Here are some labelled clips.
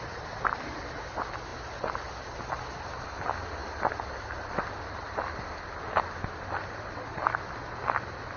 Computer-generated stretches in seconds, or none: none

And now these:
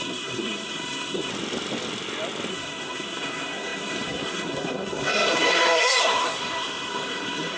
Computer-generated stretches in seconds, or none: 0.0-1.3 (codec, SNAC); 2.5-7.6

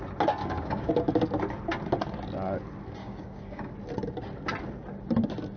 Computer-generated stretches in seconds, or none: 0.4-0.9 (codec, DAC); 3.0-3.7

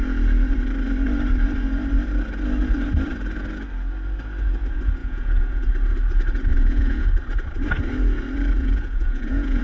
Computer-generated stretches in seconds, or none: 5.0-5.7 (vocoder, Vocos); 6.5-7.1; 8.6-9.6